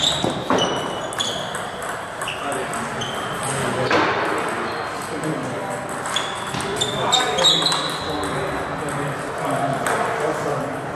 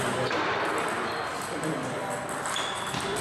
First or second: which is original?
first